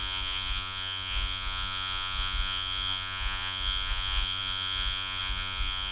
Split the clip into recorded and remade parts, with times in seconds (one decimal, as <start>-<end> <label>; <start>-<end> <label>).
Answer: 0.0-5.9 remade